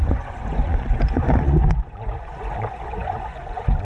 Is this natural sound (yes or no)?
no